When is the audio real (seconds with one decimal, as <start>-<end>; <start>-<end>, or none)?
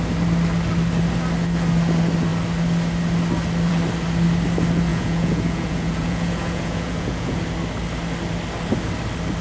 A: 0.0-4.9; 7.4-9.4